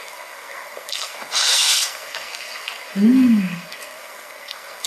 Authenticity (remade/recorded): remade